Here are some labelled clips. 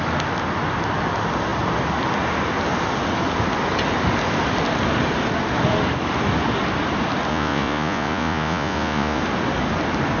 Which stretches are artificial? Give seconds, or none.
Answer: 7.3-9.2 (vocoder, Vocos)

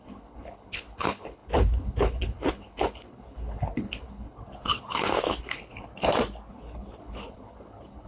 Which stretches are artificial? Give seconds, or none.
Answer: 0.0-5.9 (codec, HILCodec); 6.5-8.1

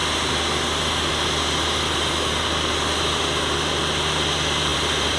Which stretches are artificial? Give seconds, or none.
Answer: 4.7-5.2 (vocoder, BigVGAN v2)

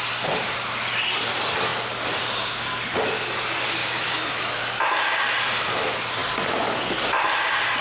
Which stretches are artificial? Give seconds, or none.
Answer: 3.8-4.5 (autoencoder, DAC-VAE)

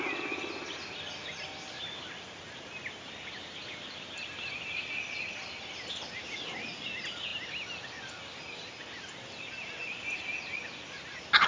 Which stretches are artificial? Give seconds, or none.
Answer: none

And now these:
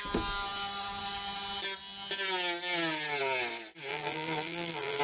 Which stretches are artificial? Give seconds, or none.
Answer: 3.9-5.0 (vocoder, BigVGAN v2)

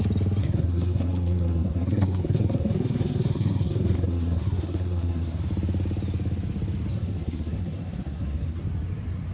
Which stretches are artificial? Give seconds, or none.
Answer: 0.4-5.4 (codec, SNAC); 6.9-8.6

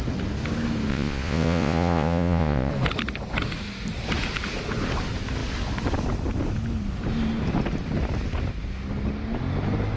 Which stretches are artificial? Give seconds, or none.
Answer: 0.9-2.7 (vocoder, Vocos)